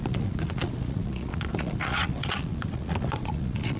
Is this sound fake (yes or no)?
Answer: yes